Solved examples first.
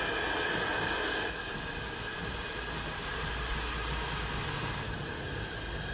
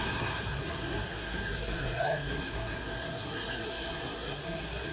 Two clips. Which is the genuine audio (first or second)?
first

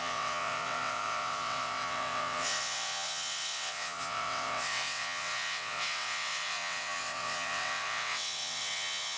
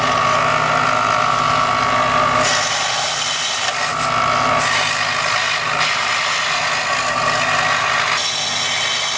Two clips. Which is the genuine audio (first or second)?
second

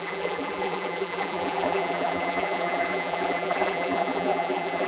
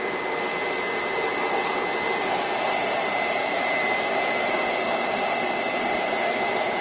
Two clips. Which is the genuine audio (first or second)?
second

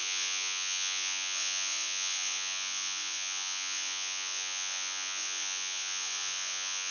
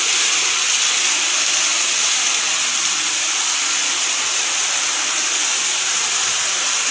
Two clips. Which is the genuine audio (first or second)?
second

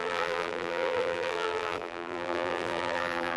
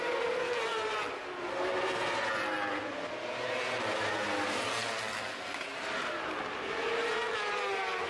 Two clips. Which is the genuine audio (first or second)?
second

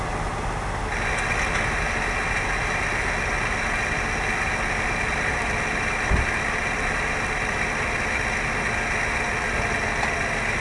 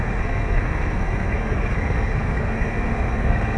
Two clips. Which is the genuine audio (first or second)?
first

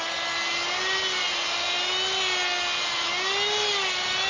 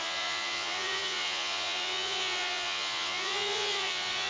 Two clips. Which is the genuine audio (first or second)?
first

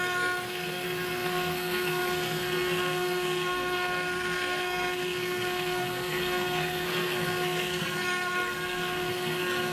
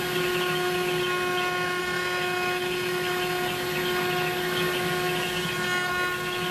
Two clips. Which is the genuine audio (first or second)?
second